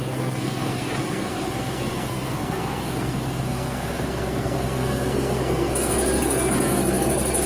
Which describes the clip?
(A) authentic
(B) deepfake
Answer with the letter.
B